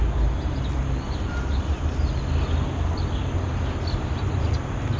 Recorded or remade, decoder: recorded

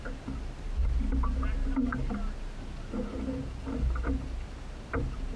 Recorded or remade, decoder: recorded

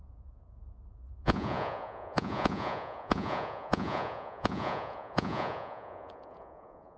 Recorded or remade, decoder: remade, vocoder, Vocos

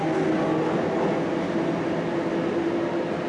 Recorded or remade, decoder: recorded